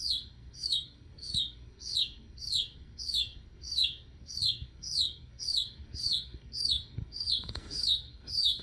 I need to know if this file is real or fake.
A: fake